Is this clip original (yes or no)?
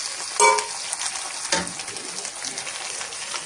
yes